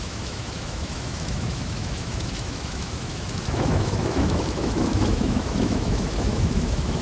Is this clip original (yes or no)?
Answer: no